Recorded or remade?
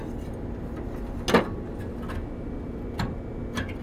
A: recorded